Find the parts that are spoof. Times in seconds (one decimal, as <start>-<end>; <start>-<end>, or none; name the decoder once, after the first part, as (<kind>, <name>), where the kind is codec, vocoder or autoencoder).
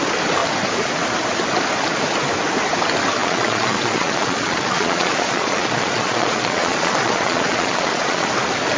3.2-8.3 (vocoder, Vocos)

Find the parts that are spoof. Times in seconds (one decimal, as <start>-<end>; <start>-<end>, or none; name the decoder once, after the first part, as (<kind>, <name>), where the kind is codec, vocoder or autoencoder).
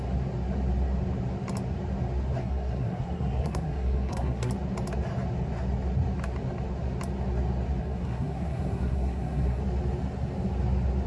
2.4-4.5 (codec, SNAC); 7.8-9.6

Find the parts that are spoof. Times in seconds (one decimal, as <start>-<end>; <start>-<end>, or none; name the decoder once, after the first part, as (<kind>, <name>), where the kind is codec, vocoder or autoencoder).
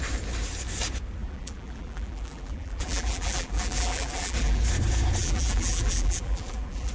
1.2-4.6 (vocoder, BigVGAN v2); 5.2-6.9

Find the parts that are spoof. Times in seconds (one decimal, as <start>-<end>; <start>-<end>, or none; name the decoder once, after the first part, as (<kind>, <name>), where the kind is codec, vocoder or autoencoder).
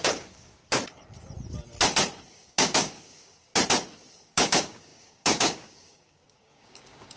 0.0-0.6 (codec, DAC); 2.3-3.5; 4.1-7.2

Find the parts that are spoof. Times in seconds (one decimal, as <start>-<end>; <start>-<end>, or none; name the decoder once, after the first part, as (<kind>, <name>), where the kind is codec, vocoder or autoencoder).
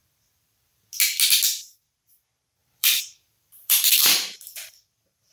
2.6-5.3 (vocoder, BigVGAN v2)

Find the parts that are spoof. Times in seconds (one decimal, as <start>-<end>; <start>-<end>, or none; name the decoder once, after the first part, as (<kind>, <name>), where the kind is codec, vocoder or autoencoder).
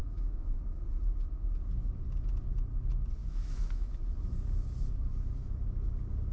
0.0-0.6 (autoencoder, DAC-VAE); 3.2-3.9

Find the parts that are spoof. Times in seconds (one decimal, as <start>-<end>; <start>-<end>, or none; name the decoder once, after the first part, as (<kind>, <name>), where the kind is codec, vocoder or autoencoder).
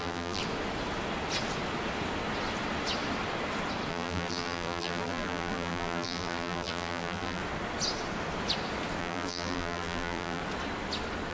0.0-0.4 (vocoder, BigVGAN v2); 3.9-7.4; 9.0-10.4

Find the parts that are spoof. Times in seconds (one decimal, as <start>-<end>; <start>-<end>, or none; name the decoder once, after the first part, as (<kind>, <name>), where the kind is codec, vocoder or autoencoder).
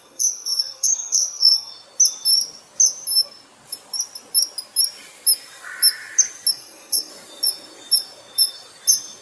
0.0-1.7 (codec, SNAC); 6.5-7.1